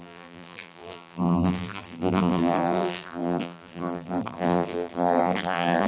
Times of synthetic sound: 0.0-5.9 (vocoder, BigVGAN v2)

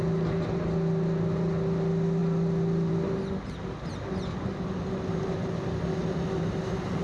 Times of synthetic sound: none